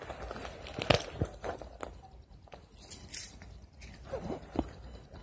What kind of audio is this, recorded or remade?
recorded